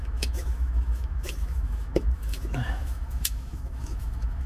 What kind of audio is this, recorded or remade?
remade